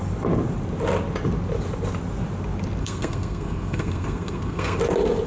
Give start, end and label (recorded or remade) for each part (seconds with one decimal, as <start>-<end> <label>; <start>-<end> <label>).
0.0-2.8 recorded; 2.8-4.8 remade; 4.8-5.3 recorded